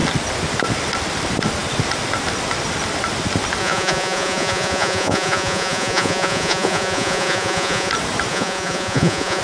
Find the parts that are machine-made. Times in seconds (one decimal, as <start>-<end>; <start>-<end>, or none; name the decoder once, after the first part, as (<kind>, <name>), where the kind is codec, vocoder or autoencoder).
3.6-7.9 (vocoder, Vocos); 8.3-9.4

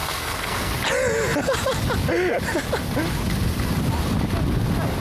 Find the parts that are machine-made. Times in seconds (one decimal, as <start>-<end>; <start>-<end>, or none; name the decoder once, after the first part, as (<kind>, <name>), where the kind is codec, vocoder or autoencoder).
0.0-0.7 (codec, SNAC)

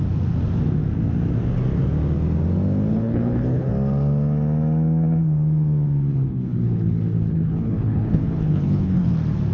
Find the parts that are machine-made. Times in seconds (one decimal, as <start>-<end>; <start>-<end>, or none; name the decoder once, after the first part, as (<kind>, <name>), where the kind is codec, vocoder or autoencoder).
2.9-3.7 (codec, HILCodec); 6.1-9.1

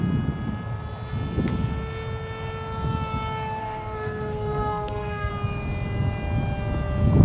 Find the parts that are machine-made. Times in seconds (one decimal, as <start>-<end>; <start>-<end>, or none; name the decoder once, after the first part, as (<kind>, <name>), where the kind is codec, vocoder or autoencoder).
3.6-5.3 (codec, SNAC)